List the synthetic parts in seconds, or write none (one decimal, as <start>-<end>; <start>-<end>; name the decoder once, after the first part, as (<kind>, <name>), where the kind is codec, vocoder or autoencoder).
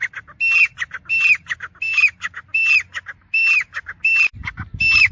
none